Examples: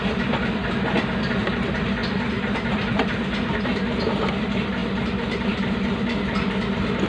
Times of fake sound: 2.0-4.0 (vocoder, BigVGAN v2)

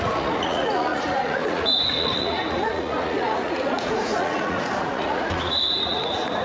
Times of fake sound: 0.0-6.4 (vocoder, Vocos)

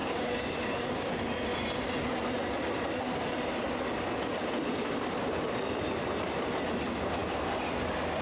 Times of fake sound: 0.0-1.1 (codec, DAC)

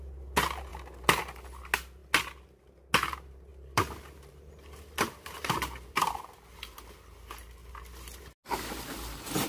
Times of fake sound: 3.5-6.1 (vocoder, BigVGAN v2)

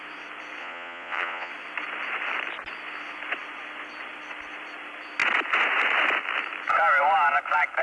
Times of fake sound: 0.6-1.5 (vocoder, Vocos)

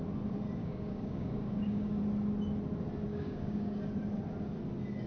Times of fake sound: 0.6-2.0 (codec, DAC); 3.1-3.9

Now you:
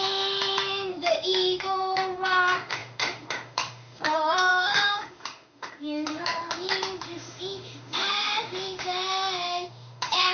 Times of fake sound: 0.0-10.3 (autoencoder, DAC-VAE)

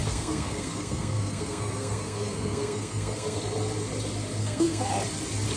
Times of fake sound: 0.0-3.4 (codec, SNAC); 4.4-4.9